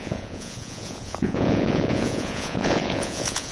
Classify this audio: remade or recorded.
remade